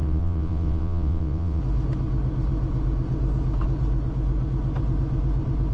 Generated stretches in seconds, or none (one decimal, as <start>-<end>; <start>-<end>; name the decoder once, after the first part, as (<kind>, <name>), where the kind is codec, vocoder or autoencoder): 0.0-1.6 (vocoder, WaveNeXt)